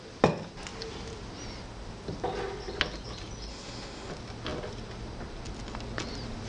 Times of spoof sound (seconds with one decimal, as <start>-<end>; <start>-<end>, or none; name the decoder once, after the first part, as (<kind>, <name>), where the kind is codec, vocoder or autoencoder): 3.5-4.1 (autoencoder, DAC-VAE)